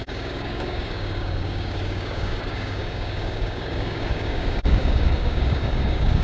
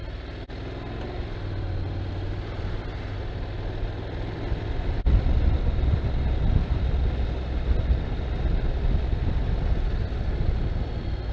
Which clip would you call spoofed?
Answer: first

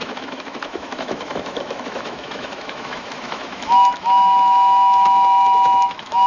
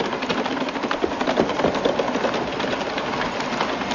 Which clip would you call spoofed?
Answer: first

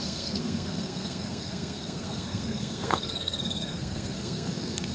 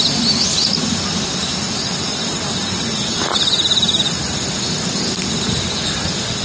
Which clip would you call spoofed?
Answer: first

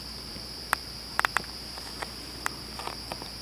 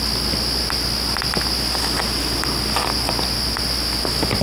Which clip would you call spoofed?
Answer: first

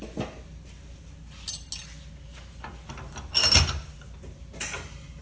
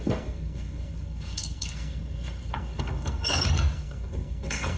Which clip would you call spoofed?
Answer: second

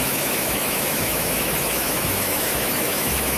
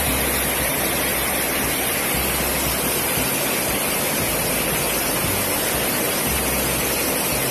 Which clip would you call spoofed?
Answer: first